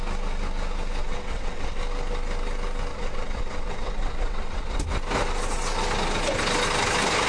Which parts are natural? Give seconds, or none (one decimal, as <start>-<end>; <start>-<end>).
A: 0.0-1.0; 1.8-2.9; 4.8-7.3